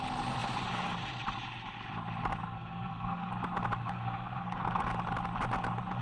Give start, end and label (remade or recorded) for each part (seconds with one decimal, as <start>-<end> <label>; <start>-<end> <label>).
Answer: 0.0-2.4 recorded; 2.4-3.3 remade; 3.3-3.8 recorded; 3.8-4.9 remade; 4.9-6.0 recorded